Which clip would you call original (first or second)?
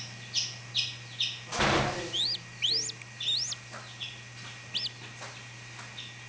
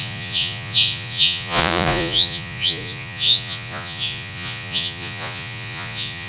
first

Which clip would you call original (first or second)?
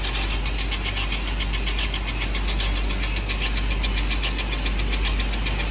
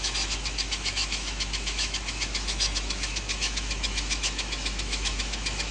first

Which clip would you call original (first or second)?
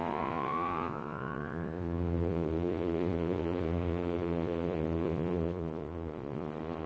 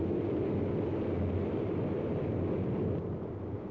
second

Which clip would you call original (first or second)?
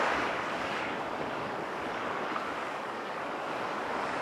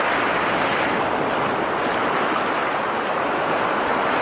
second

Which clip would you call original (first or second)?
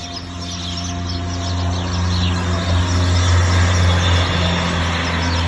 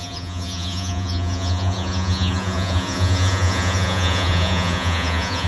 first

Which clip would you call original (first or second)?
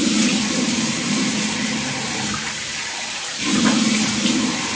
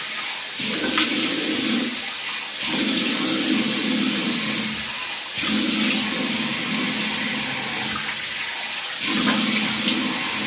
second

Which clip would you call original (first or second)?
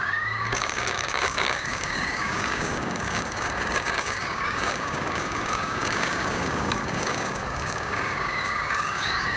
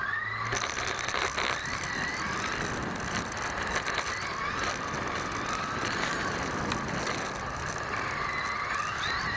second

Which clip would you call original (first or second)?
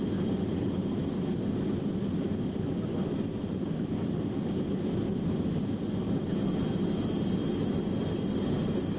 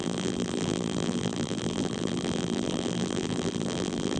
first